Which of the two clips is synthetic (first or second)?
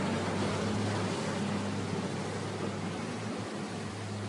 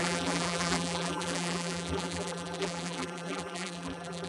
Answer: second